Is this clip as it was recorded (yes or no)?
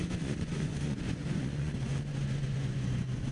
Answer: no